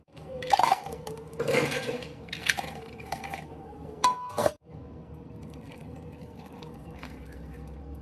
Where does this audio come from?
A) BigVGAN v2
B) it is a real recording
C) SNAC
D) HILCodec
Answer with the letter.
C